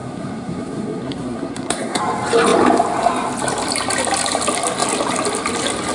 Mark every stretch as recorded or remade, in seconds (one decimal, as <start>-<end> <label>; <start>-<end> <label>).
0.0-2.0 remade; 2.0-5.9 recorded